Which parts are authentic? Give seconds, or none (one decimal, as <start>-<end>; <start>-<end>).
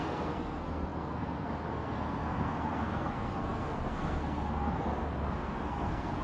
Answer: none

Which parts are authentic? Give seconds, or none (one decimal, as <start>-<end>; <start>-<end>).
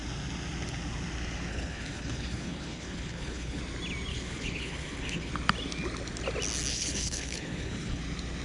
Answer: 0.0-1.5; 3.6-4.1; 5.3-6.7; 8.0-8.4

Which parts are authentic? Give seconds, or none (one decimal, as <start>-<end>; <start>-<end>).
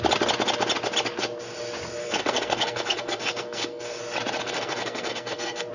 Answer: 0.0-2.0; 4.0-4.4